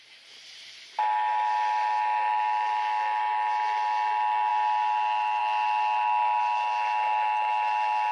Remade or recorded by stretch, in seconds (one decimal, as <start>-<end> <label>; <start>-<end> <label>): 0.0-8.1 recorded